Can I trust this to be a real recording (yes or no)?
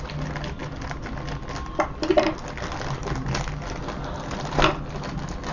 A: yes